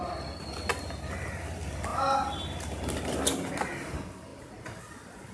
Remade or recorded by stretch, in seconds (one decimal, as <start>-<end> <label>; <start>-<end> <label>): 0.0-5.3 recorded